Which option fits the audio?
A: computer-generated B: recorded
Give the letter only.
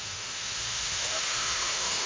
A